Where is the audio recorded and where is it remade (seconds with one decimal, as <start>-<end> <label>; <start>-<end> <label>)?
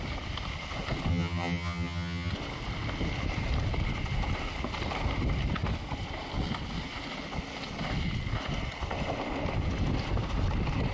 0.0-1.1 recorded; 1.1-2.3 remade; 2.3-10.9 recorded